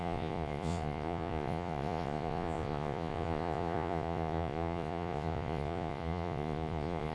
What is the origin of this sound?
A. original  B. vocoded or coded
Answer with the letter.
B